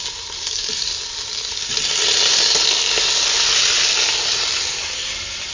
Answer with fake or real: real